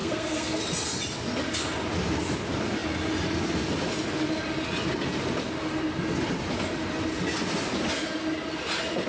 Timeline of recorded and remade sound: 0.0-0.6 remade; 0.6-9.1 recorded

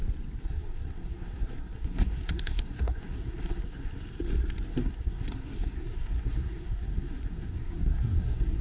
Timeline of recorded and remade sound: 0.0-0.4 recorded; 0.4-4.0 remade; 4.0-4.7 recorded; 4.7-8.6 remade

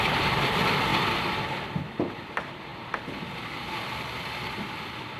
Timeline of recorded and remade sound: 0.0-5.2 recorded